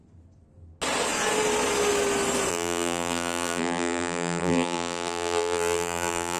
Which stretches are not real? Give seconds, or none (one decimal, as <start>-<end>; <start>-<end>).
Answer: 2.5-6.4

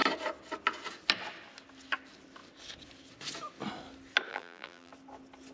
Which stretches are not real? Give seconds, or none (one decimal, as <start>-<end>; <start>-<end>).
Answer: 4.3-4.9